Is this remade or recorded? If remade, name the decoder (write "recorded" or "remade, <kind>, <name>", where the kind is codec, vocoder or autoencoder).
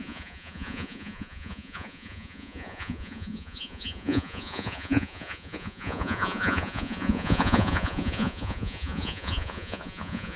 remade, vocoder, Vocos